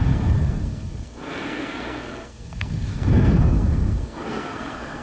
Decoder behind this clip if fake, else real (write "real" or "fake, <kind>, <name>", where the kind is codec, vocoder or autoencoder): fake, codec, SNAC